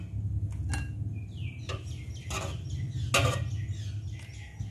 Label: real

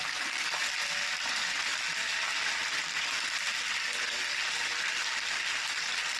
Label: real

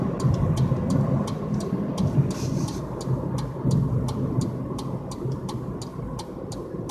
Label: real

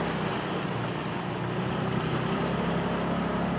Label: real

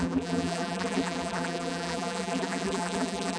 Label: fake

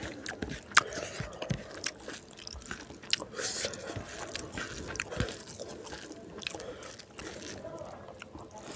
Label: real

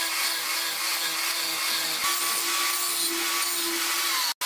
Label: real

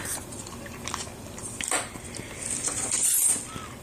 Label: fake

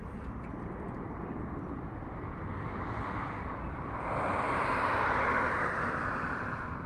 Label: fake